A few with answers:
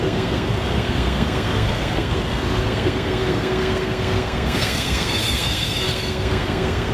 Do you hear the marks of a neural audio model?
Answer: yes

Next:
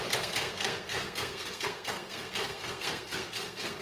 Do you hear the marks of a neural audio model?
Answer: yes